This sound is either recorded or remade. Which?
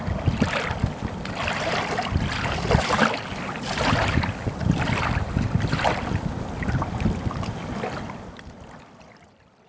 recorded